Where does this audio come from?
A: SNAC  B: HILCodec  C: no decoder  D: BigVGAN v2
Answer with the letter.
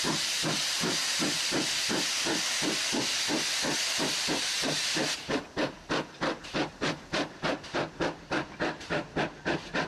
D